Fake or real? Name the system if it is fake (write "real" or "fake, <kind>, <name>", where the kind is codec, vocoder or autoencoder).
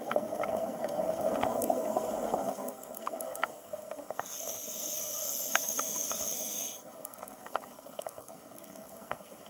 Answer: fake, codec, SNAC